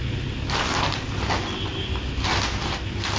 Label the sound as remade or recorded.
recorded